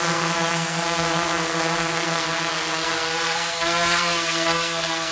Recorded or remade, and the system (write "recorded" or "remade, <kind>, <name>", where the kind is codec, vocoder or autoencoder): remade, codec, SNAC